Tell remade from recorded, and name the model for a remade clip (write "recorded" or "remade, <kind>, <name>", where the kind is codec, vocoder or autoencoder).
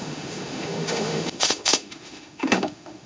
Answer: remade, autoencoder, DAC-VAE